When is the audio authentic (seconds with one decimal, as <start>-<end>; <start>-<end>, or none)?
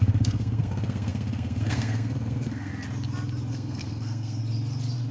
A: 2.7-3.5; 4.4-5.1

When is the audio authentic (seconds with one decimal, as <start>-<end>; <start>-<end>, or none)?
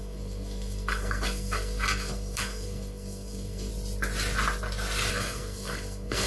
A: 3.7-5.1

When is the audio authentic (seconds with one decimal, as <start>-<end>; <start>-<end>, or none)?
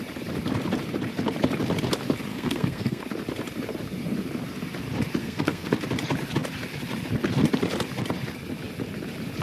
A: 0.0-2.3; 3.0-5.2; 5.7-9.4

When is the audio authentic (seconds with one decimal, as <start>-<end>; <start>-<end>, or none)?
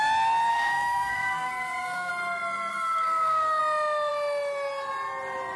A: 0.0-0.5; 2.1-2.7; 3.6-5.6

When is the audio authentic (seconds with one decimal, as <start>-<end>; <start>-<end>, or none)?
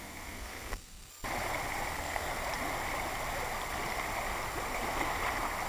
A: 1.1-1.9; 2.3-5.7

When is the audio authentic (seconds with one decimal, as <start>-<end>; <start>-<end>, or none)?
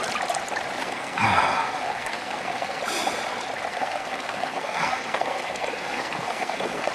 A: 0.0-0.8; 2.8-3.7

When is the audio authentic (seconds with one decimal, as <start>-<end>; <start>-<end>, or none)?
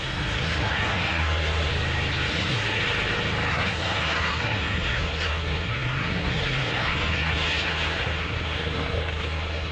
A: 1.7-2.3; 2.8-3.5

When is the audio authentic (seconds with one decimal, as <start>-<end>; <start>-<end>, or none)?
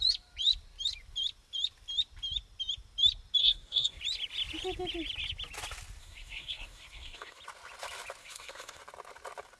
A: 0.0-3.4; 4.0-6.0; 7.4-8.2; 8.8-9.6